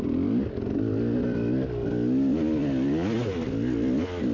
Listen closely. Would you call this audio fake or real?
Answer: real